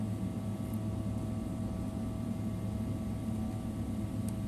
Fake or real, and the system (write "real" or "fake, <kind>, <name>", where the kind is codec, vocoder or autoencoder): real